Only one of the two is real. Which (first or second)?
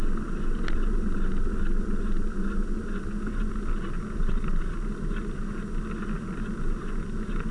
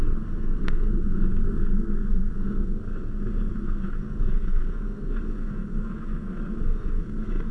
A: first